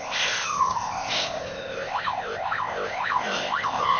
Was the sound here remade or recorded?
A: remade